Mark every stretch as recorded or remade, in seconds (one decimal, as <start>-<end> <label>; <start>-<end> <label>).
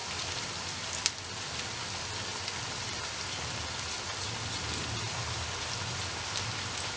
0.0-7.0 recorded